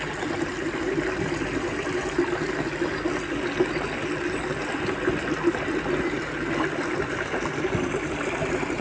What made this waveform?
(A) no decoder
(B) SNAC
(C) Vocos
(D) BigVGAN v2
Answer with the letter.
A